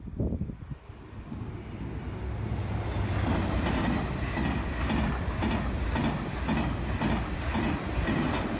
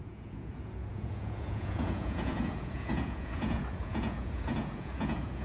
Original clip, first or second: first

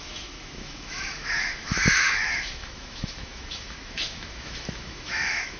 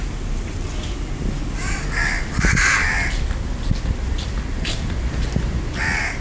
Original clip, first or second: second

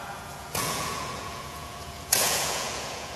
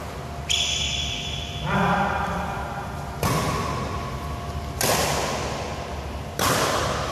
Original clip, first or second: second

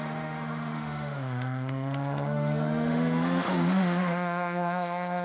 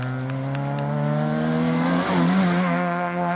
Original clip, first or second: second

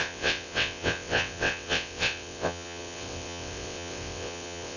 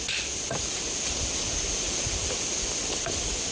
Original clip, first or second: second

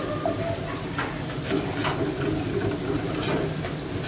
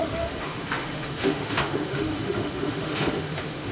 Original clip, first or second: first